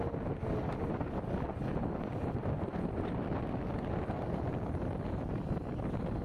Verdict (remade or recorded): recorded